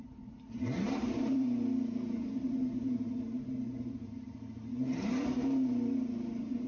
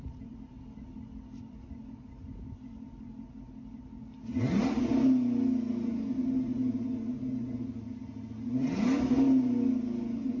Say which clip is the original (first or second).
second